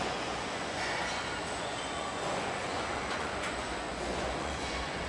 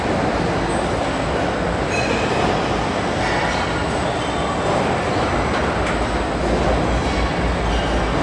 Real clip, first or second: second